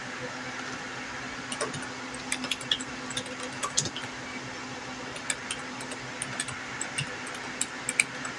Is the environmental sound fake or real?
real